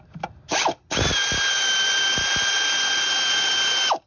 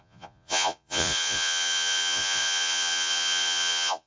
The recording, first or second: first